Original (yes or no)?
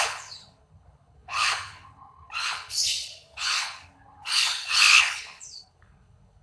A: no